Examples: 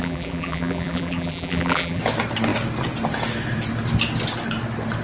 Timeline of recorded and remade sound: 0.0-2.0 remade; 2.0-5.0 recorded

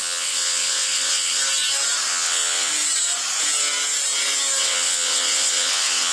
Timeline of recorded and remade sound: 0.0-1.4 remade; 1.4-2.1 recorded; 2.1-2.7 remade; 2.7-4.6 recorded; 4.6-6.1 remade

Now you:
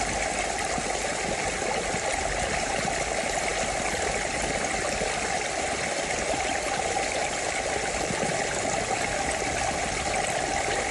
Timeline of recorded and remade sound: 0.0-10.9 recorded